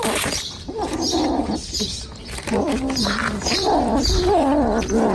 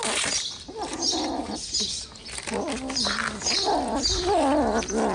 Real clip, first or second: second